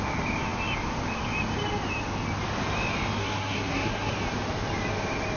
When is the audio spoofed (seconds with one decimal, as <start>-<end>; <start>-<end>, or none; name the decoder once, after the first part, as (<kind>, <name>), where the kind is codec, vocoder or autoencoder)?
3.2-4.1 (codec, SNAC)